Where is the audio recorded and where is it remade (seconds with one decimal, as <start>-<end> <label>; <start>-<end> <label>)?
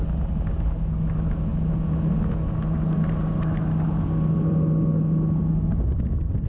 0.0-6.5 recorded